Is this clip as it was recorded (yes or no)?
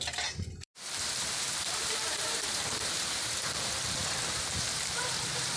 no